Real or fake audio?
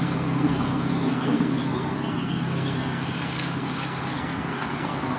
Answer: fake